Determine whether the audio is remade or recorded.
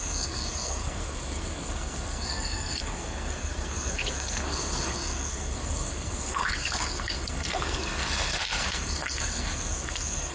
remade